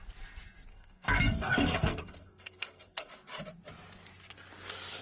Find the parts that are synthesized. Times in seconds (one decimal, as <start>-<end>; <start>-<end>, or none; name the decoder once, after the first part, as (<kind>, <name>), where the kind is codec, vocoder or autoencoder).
0.7-3.1 (codec, SNAC)